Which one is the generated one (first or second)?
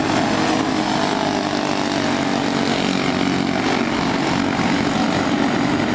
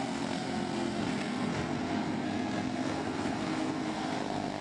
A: second